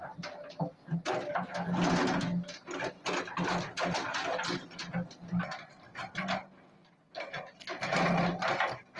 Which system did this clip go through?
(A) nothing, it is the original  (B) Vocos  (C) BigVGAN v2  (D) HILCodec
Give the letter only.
A